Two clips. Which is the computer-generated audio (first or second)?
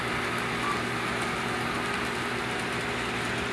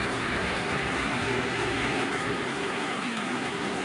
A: second